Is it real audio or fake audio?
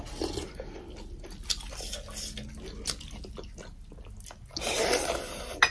real